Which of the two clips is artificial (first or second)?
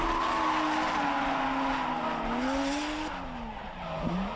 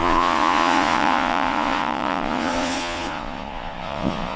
second